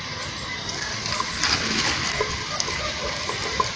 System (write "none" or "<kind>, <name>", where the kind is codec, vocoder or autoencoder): none